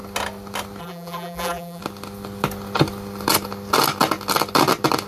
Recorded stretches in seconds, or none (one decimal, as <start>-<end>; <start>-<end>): 0.0-0.8; 1.8-5.1